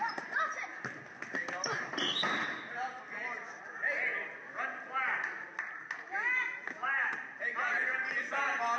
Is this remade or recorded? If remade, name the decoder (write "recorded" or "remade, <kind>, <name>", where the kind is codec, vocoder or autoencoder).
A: recorded